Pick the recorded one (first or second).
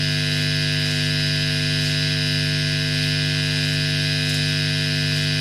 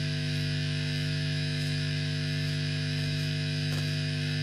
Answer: first